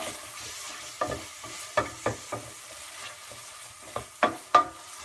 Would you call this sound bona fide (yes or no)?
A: yes